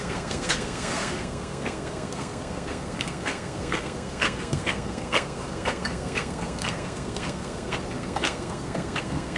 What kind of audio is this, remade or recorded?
remade